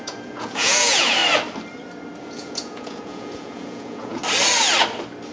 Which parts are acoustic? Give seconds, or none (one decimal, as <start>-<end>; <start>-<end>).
1.2-2.2; 4.2-5.3